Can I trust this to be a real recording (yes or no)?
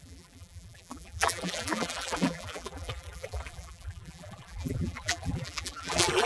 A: no